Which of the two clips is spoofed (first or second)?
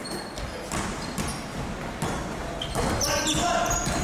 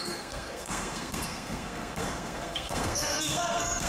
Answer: second